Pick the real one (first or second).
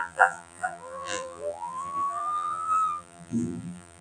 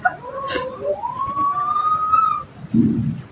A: second